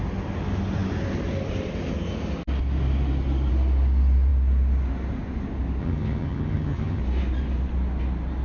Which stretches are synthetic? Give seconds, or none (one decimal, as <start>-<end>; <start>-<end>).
5.8-7.0